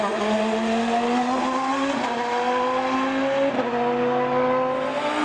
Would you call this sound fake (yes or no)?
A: no